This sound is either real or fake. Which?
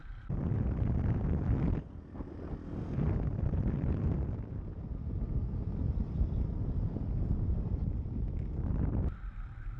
fake